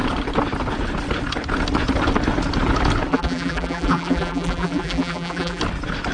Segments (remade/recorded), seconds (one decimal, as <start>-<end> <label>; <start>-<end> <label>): 0.0-3.1 recorded; 3.1-5.6 remade; 5.6-6.1 recorded